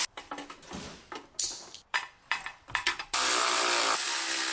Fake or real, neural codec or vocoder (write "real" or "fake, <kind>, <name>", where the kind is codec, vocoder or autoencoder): real